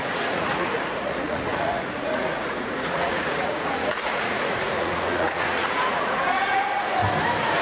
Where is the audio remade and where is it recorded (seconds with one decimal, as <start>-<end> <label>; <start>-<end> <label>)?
0.0-7.0 remade; 7.0-7.6 recorded